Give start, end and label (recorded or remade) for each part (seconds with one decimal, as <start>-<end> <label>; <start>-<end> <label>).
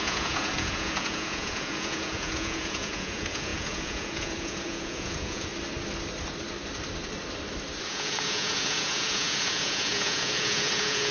0.0-5.5 remade; 5.5-7.8 recorded; 7.8-11.1 remade